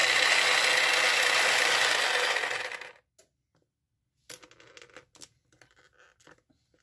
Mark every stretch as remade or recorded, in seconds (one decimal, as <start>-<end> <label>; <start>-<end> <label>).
0.0-6.8 recorded